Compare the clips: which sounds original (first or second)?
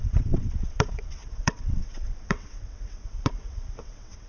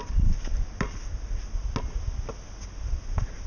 second